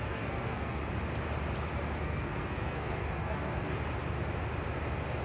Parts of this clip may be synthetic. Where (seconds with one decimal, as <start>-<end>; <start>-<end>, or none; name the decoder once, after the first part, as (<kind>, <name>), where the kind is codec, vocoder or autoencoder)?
0.0-0.8 (codec, SNAC); 2.0-3.6